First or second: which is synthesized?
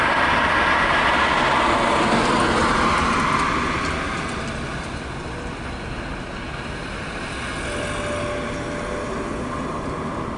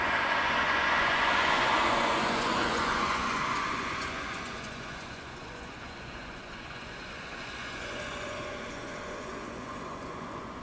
second